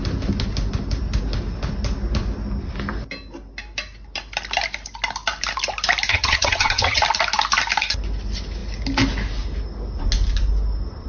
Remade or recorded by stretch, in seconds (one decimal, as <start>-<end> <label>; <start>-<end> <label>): 0.0-6.1 recorded; 6.1-7.0 remade; 7.0-11.1 recorded